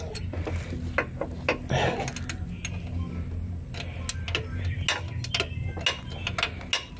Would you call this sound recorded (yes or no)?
yes